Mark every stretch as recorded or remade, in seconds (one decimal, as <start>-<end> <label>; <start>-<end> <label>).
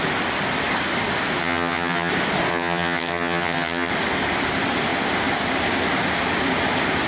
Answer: 0.0-1.4 recorded; 1.4-2.1 remade; 2.1-2.5 recorded; 2.5-3.9 remade; 3.9-7.1 recorded